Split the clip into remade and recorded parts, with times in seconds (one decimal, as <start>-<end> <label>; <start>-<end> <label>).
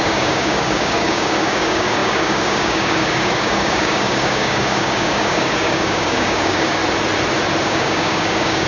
0.0-6.8 remade; 6.8-7.6 recorded; 7.6-8.7 remade